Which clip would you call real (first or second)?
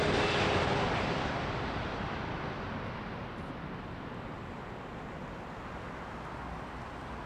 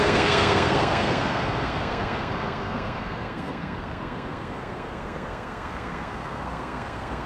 first